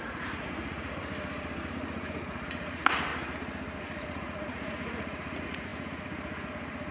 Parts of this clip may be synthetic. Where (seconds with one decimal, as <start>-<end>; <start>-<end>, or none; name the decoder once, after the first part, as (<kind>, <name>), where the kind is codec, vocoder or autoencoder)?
0.0-1.1 (vocoder, Vocos); 1.7-3.1; 3.8-6.9